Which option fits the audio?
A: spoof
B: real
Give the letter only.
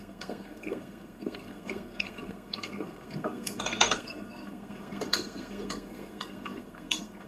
A